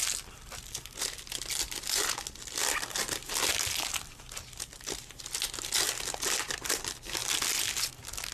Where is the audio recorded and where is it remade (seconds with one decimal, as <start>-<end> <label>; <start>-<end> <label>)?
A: 0.0-8.3 recorded